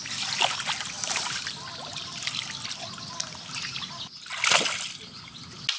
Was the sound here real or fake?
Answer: real